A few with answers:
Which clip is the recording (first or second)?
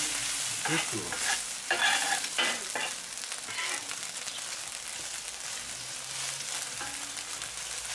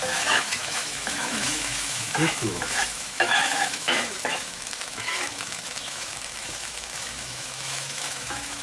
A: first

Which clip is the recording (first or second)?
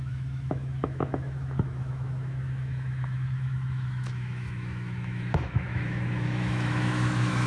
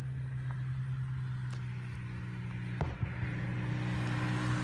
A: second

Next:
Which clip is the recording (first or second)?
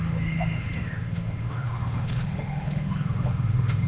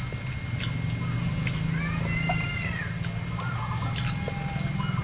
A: second